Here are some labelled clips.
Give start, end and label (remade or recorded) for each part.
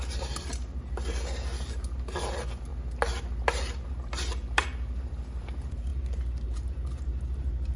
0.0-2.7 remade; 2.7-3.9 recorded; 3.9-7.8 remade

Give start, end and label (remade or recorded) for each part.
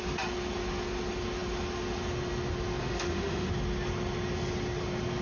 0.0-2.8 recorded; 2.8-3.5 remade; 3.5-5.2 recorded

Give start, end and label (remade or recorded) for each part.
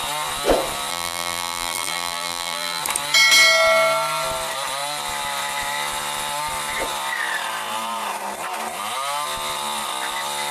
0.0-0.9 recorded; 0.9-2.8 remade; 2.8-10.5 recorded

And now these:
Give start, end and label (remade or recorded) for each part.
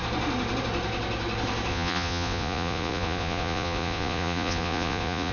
0.0-1.7 recorded; 1.7-5.3 remade